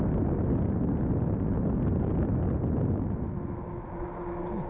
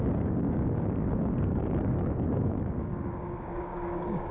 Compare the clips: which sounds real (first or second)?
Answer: first